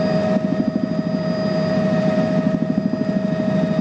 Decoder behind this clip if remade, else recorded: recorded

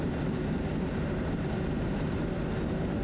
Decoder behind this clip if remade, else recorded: recorded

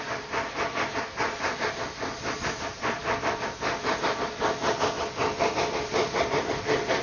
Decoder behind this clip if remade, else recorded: recorded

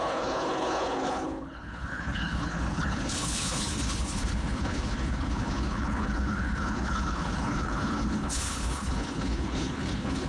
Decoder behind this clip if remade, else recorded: remade, codec, HILCodec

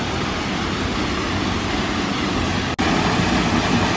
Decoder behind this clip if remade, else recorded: recorded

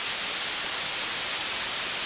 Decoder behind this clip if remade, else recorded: remade, vocoder, BigVGAN v2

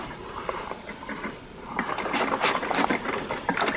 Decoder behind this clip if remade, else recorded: recorded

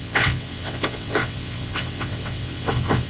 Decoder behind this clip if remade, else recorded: remade, vocoder, WaveNeXt